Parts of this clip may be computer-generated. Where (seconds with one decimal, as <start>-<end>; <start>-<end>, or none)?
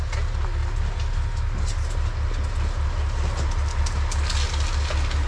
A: none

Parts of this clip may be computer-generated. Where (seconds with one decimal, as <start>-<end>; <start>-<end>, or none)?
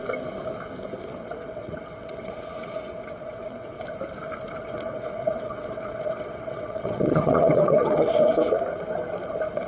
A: 1.2-3.8; 4.5-8.6